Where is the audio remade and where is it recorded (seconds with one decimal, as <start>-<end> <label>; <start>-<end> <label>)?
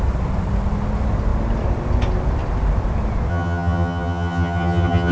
0.0-3.3 recorded; 3.3-5.1 remade